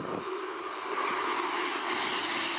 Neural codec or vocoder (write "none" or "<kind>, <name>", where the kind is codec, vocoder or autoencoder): none